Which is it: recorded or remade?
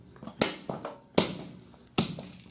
recorded